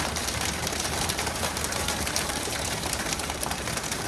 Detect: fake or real fake